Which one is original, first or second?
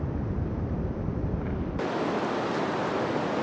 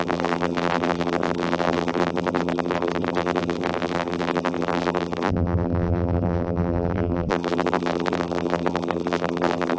first